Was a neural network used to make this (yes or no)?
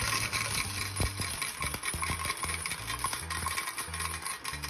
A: no